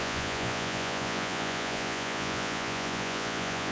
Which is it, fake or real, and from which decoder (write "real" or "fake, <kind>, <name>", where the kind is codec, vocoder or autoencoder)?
fake, vocoder, Vocos